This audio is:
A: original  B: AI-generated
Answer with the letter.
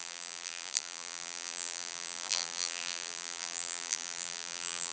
B